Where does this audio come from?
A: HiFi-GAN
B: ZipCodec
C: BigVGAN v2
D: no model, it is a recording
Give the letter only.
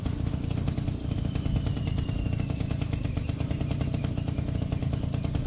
D